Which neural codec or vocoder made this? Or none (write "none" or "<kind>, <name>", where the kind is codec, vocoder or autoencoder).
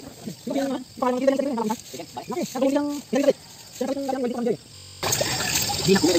none